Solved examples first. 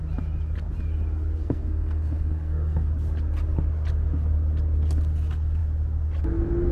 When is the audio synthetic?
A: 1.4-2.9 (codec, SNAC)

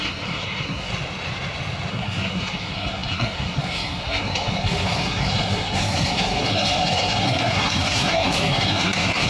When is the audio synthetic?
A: 0.0-0.9 (codec, SNAC); 1.9-9.3

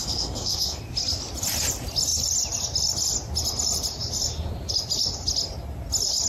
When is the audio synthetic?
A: 0.0-0.8 (codec, SNAC)

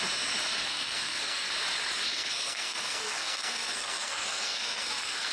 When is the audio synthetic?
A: 0.6-1.5 (codec, SNAC); 2.1-5.3

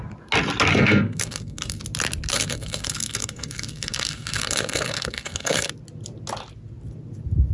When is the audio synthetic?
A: 0.7-1.8 (codec, SNAC); 2.3-5.7

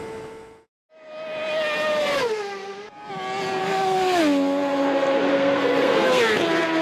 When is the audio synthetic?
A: 3.6-4.2 (codec, SNAC); 5.3-6.2

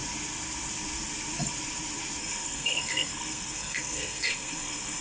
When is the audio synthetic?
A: 2.2-5.0 (codec, SNAC)

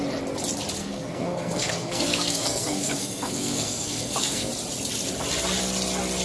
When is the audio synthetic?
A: 0.8-4.5 (codec, SNAC)